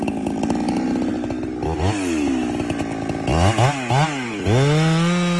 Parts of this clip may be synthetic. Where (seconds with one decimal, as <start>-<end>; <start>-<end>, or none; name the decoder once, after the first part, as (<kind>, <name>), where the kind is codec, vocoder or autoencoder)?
none